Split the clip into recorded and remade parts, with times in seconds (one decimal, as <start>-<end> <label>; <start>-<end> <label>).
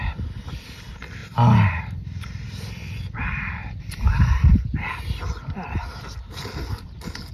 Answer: 0.0-7.3 recorded